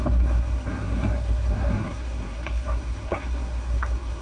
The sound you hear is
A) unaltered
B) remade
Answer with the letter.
B